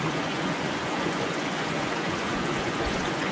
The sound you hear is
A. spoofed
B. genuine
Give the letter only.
A